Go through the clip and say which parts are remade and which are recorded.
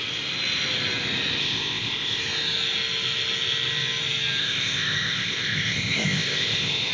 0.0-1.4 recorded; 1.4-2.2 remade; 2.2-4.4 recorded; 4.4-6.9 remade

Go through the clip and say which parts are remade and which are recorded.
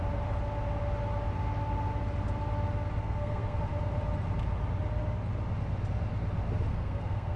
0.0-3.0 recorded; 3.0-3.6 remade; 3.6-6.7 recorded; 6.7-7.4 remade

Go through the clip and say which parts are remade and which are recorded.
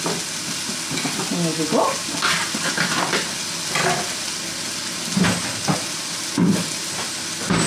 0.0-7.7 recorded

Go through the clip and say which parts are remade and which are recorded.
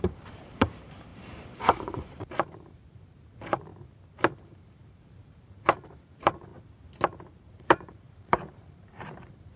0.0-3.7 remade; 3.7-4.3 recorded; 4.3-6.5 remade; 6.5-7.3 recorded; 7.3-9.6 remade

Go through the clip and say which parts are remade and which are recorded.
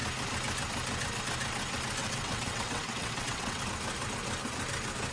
0.0-2.0 recorded; 2.0-3.6 remade; 3.6-5.1 recorded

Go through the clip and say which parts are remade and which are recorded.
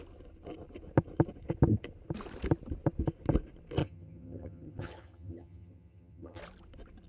0.0-3.8 recorded; 3.8-6.4 remade; 6.4-7.1 recorded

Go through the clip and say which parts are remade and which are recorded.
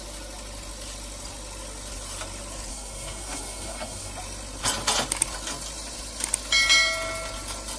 0.0-2.7 recorded; 2.7-4.1 remade; 4.1-7.8 recorded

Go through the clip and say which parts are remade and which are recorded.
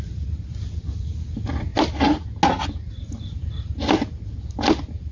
0.0-5.1 recorded